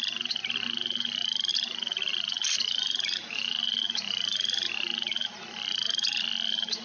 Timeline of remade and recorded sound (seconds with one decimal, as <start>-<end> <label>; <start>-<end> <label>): 0.0-6.8 recorded